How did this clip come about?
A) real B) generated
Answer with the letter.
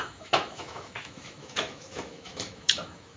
B